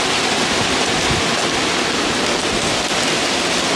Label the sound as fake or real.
real